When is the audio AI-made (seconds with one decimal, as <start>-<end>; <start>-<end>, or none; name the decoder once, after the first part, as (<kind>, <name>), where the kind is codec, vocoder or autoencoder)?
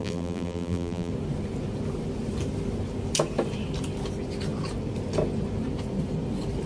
0.0-1.1 (vocoder, BigVGAN v2)